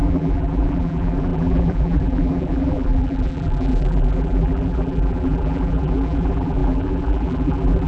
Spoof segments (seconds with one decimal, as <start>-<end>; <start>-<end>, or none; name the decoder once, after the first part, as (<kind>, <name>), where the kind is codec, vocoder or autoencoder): 0.0-7.9 (vocoder, BigVGAN v2)